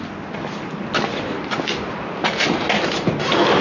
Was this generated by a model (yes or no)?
no